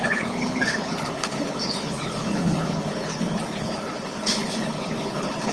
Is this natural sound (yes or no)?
no